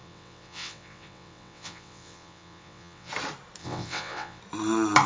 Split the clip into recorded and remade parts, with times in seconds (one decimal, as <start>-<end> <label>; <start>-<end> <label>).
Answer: 0.0-3.1 remade; 3.1-3.6 recorded; 3.6-4.4 remade; 4.4-5.1 recorded